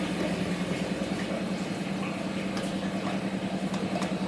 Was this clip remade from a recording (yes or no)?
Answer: no